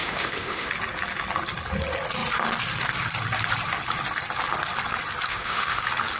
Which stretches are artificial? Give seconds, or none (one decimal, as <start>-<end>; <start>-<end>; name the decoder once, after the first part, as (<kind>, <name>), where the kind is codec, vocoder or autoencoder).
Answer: 0.0-0.7 (autoencoder, DAC-VAE); 5.3-5.8